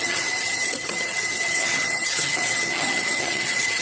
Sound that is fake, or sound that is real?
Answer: fake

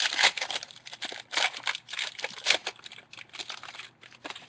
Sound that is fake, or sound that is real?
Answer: fake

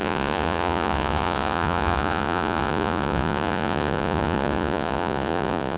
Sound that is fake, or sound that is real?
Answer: fake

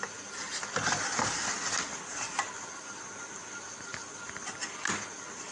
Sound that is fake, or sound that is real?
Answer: real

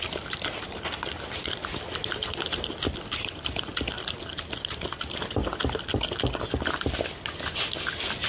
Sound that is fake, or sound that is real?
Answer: real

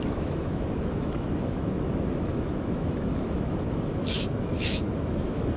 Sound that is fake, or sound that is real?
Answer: fake